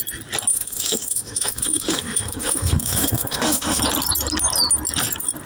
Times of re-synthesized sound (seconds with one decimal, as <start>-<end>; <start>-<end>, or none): 0.5-3.8

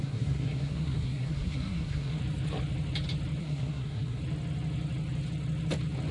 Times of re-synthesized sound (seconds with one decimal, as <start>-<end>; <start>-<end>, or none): 0.0-2.2; 3.4-4.2

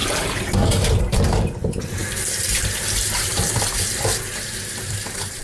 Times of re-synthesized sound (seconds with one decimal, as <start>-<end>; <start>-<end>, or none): 0.0-5.4

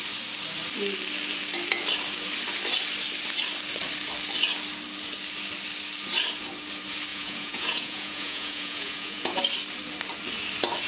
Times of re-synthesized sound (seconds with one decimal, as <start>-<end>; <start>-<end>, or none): 7.1-9.4

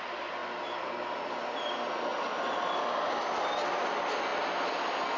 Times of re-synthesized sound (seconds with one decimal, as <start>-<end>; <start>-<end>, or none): none